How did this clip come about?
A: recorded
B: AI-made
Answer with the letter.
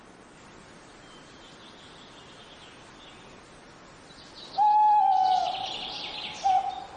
A